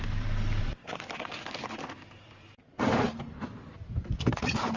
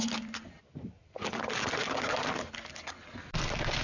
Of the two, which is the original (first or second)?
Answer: second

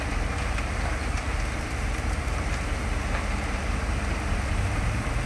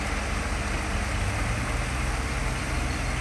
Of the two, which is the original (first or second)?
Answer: second